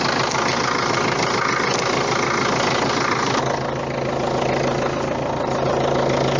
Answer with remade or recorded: recorded